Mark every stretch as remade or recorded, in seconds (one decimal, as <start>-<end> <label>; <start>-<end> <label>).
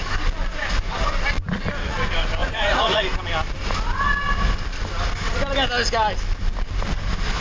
0.0-2.4 recorded; 2.4-3.0 remade; 3.0-7.4 recorded